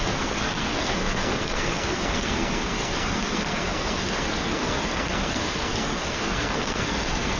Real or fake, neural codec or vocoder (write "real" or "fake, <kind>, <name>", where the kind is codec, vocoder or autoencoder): fake, codec, SNAC